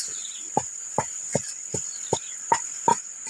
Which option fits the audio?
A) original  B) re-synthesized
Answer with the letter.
A